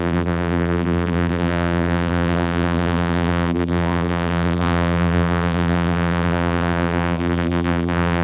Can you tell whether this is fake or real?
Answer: fake